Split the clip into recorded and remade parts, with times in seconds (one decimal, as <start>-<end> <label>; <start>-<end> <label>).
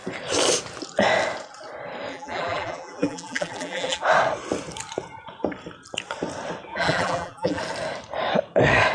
0.0-2.1 recorded; 2.1-4.0 remade; 4.0-6.7 recorded; 6.7-7.6 remade; 7.6-8.9 recorded